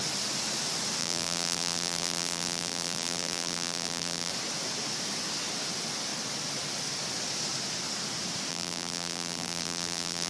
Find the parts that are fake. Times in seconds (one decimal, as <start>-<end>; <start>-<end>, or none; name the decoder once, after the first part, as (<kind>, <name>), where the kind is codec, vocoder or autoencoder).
1.0-4.3 (vocoder, BigVGAN v2); 8.5-10.3